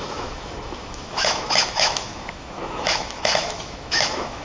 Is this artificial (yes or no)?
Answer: yes